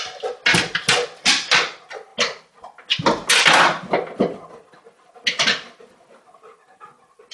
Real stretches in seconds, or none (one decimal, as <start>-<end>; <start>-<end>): 0.0-7.3